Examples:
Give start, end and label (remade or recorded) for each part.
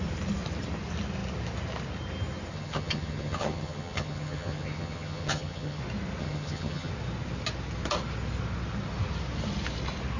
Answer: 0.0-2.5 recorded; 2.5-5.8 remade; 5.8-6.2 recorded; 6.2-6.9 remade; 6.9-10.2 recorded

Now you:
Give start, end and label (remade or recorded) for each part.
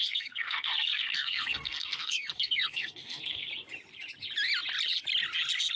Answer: 0.0-3.5 remade; 3.5-5.8 recorded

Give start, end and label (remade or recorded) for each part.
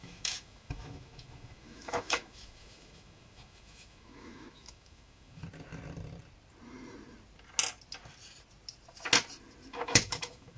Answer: 0.0-5.4 remade; 5.4-9.7 recorded; 9.7-10.6 remade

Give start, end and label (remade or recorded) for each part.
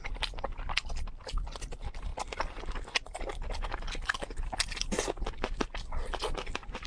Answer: 0.0-6.9 recorded